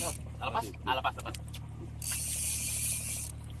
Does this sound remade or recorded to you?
recorded